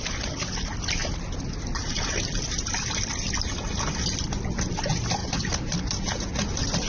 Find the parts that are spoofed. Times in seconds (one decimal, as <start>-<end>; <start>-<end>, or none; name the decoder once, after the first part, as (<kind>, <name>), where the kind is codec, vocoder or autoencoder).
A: none